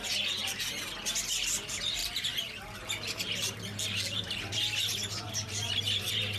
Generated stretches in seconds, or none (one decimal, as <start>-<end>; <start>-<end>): 2.0-3.6